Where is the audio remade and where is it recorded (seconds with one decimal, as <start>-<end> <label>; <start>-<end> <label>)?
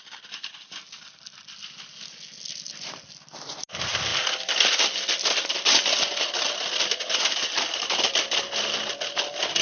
0.0-9.6 recorded